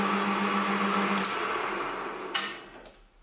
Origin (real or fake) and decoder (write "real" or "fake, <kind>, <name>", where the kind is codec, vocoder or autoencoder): real